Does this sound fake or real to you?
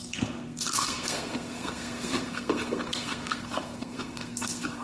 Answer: fake